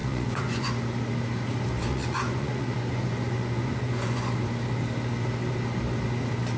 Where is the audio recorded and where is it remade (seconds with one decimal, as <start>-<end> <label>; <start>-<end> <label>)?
0.0-0.7 remade; 0.7-1.9 recorded; 1.9-4.3 remade; 4.3-6.6 recorded